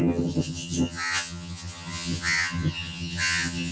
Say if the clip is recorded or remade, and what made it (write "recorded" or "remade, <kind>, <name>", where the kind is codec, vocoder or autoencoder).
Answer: remade, vocoder, HiFi-GAN